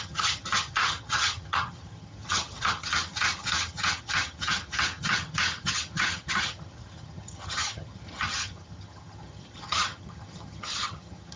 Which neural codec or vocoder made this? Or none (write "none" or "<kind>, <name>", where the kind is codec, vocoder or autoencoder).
vocoder, HiFi-GAN